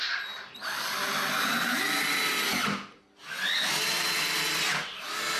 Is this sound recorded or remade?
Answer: recorded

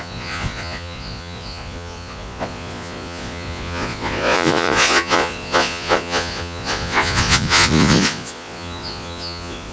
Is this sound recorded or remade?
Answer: remade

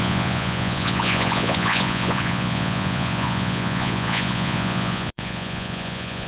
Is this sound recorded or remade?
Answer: remade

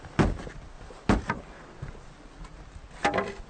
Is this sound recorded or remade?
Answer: recorded